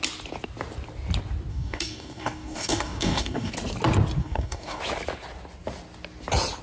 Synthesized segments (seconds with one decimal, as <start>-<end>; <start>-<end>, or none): 1.5-3.5; 4.2-4.8